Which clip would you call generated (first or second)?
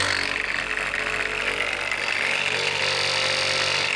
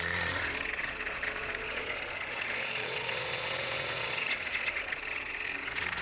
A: second